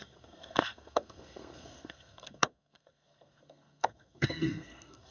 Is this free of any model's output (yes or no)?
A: no